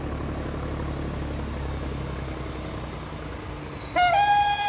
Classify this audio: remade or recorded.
recorded